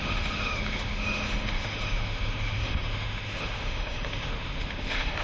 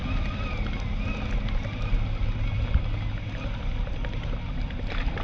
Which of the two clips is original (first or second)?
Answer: second